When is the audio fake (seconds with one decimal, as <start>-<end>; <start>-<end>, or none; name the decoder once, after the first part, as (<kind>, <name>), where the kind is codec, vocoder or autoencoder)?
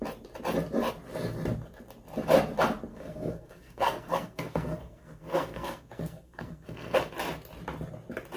2.9-7.0 (codec, SNAC)